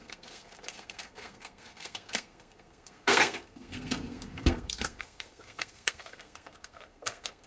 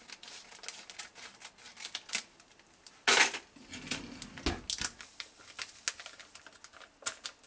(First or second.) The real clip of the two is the second